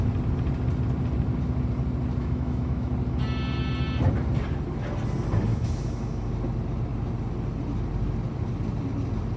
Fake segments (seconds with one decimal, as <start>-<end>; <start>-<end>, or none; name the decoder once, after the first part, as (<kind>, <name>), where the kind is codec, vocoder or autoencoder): 2.2-2.9 (autoencoder, DAC-VAE); 5.5-6.3